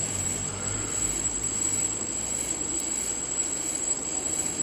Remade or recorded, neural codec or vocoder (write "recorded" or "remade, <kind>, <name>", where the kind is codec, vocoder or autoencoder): remade, vocoder, BigVGAN v2